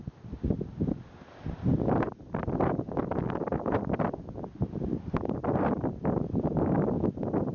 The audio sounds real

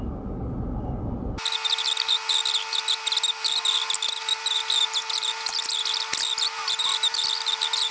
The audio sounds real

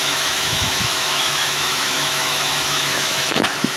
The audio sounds fake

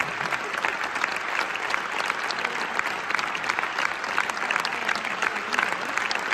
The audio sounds real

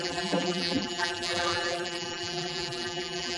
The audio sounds fake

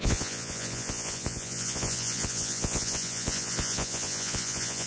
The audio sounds fake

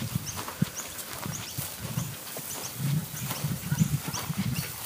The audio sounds fake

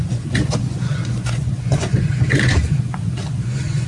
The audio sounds fake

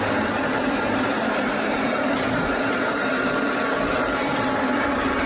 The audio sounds fake